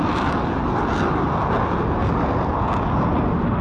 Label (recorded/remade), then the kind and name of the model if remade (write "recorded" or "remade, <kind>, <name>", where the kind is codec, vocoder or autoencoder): recorded